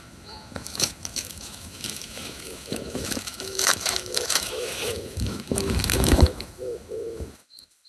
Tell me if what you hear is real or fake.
fake